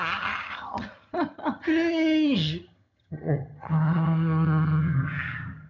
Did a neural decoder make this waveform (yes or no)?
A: yes